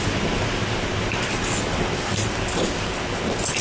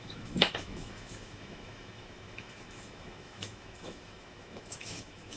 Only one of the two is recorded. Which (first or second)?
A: first